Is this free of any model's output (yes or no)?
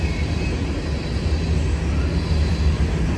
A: yes